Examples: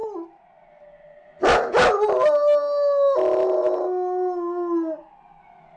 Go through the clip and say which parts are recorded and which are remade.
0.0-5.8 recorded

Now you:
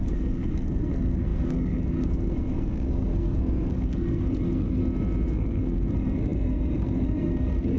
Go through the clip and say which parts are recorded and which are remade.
0.0-4.8 remade; 4.8-5.3 recorded; 5.3-7.8 remade

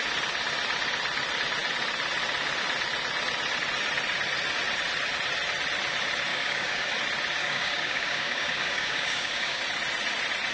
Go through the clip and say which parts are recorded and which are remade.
0.0-6.3 recorded; 6.3-6.9 remade; 6.9-7.4 recorded; 7.4-9.6 remade; 9.6-10.5 recorded

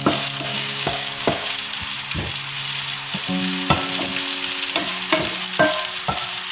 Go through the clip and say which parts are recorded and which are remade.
0.0-0.5 recorded; 0.5-1.5 remade; 1.5-6.5 recorded